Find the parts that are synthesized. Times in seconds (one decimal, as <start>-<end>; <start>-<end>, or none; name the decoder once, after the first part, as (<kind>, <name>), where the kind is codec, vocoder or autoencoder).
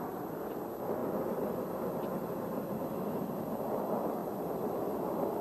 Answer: none